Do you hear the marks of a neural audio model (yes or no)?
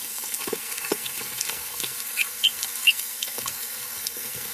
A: yes